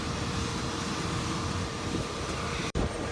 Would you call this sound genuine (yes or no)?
no